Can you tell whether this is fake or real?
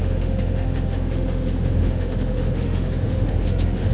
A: fake